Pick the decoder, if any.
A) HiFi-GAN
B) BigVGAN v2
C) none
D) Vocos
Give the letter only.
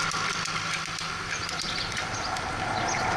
C